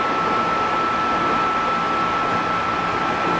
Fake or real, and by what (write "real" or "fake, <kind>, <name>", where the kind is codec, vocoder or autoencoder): real